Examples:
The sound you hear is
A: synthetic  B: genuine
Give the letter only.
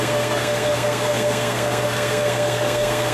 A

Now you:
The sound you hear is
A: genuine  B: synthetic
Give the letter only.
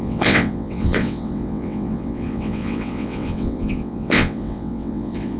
B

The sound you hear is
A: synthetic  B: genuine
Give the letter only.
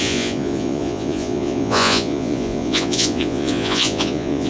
A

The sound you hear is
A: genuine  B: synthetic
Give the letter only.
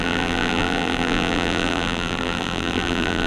B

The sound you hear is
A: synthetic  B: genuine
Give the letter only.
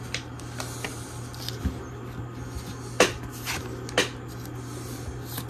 B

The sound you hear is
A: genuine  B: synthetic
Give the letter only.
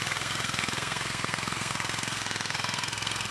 B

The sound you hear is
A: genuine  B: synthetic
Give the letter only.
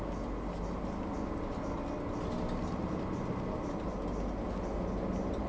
A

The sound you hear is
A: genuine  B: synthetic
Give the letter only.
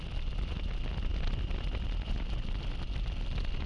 A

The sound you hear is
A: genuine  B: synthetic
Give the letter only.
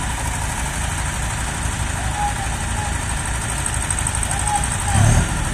A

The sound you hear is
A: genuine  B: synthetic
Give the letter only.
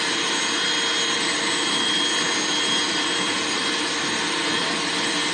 A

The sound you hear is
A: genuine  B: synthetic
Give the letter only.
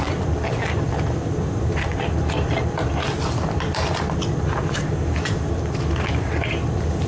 B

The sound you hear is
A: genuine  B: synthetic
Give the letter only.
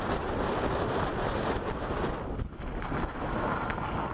A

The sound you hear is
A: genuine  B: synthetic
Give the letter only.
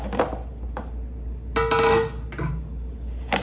A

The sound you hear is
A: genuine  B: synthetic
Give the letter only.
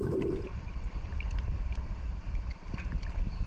A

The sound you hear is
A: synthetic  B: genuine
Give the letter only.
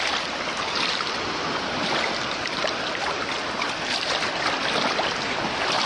A